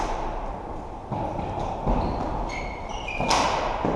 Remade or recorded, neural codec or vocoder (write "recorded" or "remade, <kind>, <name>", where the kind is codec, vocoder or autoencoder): recorded